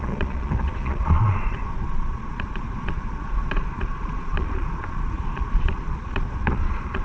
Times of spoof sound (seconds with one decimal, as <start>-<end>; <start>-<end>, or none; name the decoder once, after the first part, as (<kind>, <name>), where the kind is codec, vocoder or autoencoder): 0.0-7.0 (vocoder, Vocos)